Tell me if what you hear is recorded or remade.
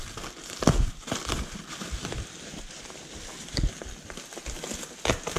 recorded